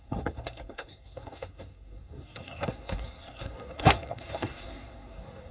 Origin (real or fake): fake